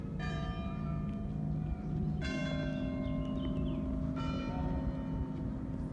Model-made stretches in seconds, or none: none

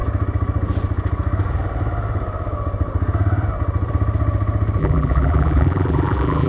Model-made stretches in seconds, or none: 4.8-6.5 (vocoder, BigVGAN v2)

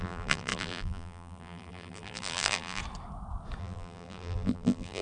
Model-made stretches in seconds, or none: 0.0-2.8 (vocoder, BigVGAN v2); 3.6-5.0

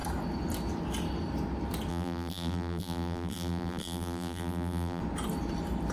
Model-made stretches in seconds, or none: 1.9-5.0 (vocoder, BigVGAN v2)

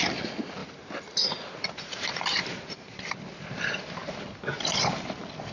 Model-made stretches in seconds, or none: 0.6-3.0 (vocoder, BigVGAN v2); 4.0-4.6

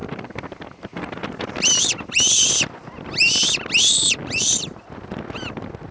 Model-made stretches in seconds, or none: 0.0-1.5 (vocoder, BigVGAN v2)